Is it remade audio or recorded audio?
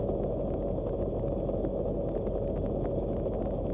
recorded